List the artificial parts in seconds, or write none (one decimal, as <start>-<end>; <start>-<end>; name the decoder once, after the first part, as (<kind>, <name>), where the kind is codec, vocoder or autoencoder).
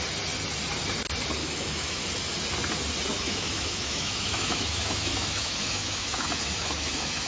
1.4-2.1 (autoencoder, DAC-VAE); 3.1-7.3